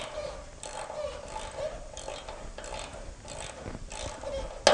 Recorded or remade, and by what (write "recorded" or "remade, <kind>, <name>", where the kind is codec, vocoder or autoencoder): recorded